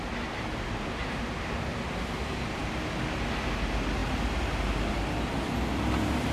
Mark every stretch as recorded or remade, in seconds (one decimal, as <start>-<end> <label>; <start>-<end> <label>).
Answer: 0.0-6.3 recorded